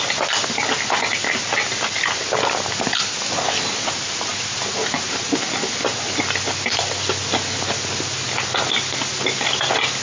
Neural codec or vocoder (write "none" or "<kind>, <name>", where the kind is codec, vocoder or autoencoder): none